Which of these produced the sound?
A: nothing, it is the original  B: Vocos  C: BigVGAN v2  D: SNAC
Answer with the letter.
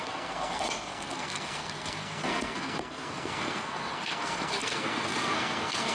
D